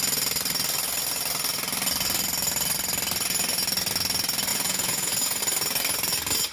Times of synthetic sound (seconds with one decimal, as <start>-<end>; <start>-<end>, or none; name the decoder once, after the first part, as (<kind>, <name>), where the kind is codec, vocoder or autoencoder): 4.5-5.4 (vocoder, Vocos)